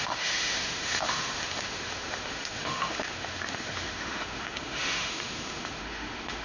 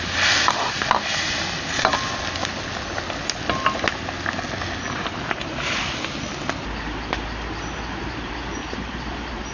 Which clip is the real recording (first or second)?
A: second